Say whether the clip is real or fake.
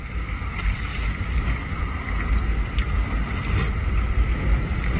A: real